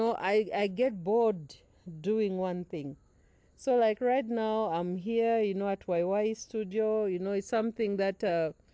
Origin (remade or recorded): recorded